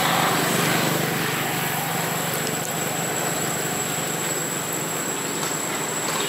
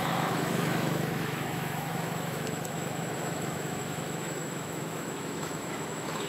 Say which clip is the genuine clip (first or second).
first